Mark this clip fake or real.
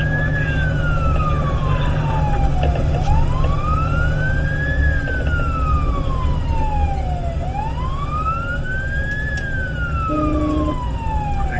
real